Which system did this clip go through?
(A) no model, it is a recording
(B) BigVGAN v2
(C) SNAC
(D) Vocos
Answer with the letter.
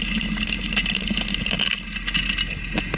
A